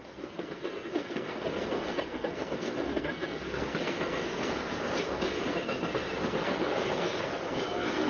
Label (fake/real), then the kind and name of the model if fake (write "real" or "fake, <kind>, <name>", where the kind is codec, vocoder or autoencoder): fake, codec, SNAC